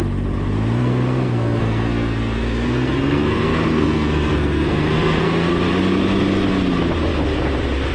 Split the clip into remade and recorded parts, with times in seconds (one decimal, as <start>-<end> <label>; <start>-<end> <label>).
0.0-0.8 recorded; 0.8-5.5 remade; 5.5-7.9 recorded